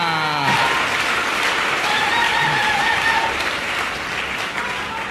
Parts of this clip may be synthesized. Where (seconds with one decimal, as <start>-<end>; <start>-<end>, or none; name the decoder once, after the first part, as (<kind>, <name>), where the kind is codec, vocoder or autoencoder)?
1.3-4.0 (vocoder, BigVGAN v2)